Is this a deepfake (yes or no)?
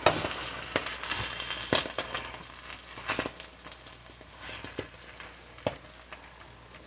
no